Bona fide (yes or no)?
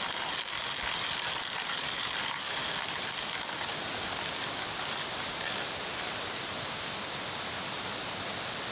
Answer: yes